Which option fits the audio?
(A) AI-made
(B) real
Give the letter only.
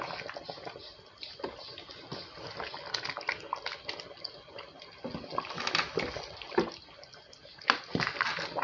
B